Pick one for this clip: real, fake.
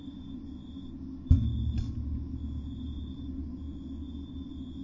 real